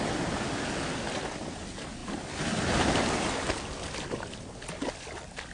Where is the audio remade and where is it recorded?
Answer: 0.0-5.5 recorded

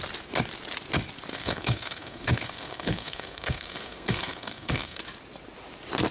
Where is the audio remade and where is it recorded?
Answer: 0.0-1.3 recorded; 1.3-5.0 remade; 5.0-6.1 recorded